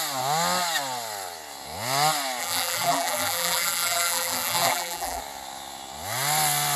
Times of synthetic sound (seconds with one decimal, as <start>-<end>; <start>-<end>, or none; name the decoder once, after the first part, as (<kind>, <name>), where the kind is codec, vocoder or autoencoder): 2.4-5.2 (vocoder, BigVGAN v2)